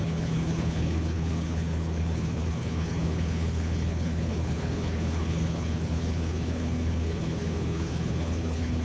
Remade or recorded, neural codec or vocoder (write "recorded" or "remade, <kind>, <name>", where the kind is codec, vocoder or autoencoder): remade, codec, HILCodec